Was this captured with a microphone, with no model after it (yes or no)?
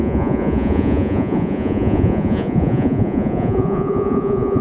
no